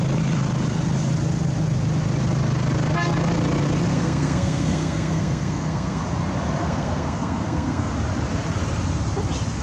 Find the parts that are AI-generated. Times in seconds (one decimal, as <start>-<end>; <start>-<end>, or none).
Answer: 3.9-6.0; 6.6-7.9